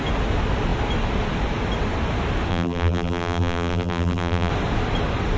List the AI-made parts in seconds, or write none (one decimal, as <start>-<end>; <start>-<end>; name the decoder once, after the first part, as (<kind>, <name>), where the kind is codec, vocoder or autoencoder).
2.5-4.5 (vocoder, BigVGAN v2)